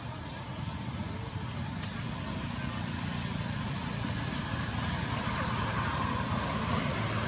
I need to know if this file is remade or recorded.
recorded